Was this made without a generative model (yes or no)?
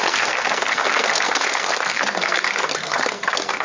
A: no